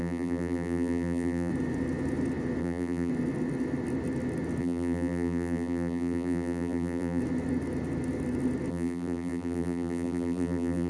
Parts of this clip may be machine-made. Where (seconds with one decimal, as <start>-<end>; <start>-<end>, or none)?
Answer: 0.0-1.5; 2.6-3.1; 4.6-7.2; 8.7-10.9